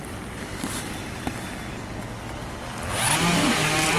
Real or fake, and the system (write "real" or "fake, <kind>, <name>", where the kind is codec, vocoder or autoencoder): real